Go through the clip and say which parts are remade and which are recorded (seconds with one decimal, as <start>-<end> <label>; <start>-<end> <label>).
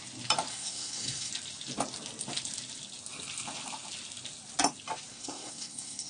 0.0-0.5 recorded; 0.5-1.3 remade; 1.3-5.1 recorded; 5.1-6.1 remade